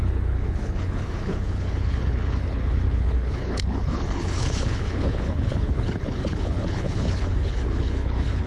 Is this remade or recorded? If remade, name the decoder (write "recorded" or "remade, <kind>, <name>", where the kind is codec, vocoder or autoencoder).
remade, codec, HILCodec